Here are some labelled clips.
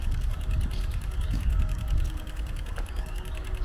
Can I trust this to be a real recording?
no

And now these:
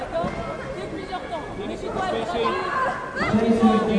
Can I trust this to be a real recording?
yes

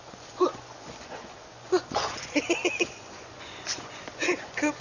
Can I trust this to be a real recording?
no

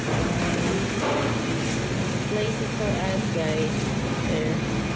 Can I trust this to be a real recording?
yes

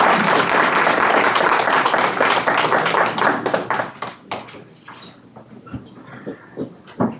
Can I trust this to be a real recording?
no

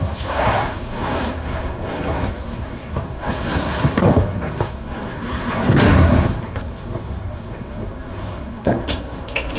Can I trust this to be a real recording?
no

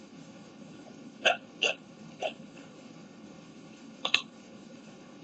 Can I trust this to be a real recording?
no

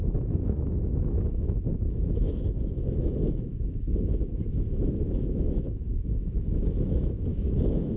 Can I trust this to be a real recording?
no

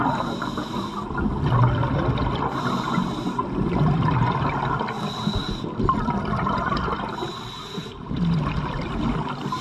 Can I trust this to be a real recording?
yes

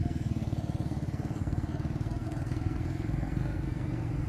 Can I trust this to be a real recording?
no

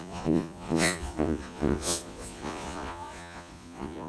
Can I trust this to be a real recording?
no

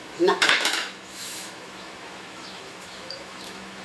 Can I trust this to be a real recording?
no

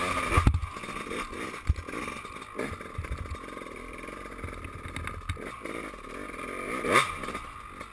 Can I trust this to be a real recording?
yes